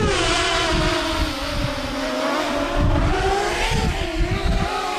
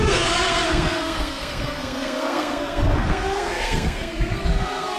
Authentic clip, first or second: first